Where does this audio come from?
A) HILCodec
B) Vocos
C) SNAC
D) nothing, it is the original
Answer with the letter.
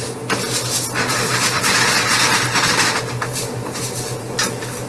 D